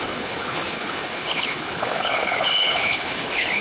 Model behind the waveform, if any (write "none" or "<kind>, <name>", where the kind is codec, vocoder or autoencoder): codec, HILCodec